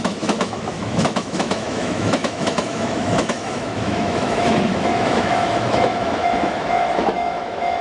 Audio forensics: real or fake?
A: fake